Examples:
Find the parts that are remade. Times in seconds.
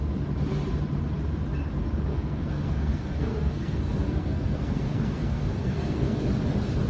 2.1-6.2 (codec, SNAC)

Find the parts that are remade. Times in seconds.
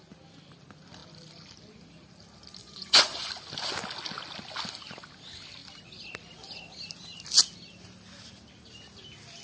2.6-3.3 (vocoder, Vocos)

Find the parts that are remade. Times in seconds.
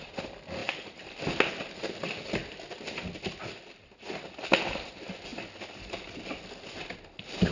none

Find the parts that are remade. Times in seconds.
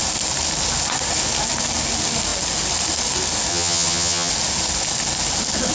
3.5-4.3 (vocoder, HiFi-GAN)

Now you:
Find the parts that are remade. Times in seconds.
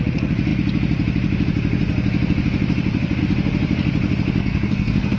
4.4-5.2 (codec, SNAC)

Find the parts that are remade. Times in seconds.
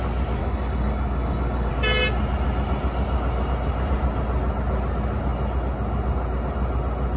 0.4-1.7 (codec, DAC)